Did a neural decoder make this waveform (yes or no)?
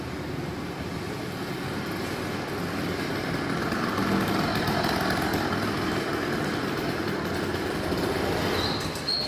no